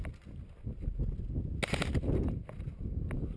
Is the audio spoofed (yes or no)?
no